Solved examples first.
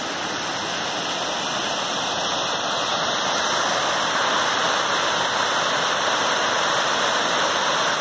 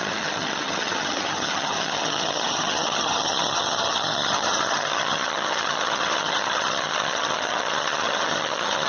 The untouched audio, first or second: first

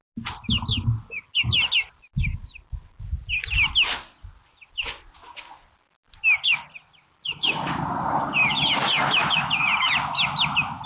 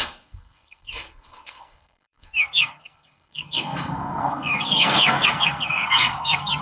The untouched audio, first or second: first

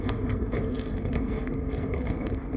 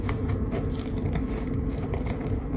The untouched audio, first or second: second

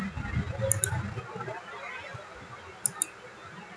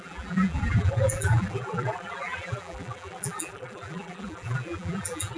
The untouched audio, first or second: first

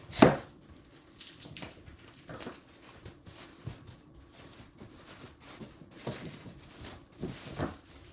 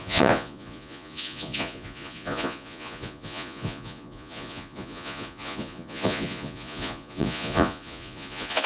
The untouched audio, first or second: first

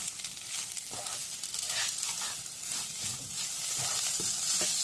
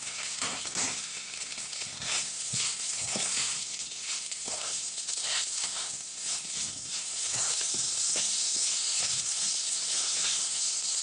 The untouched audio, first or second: first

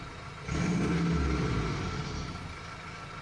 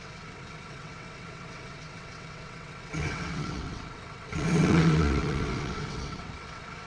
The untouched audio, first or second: first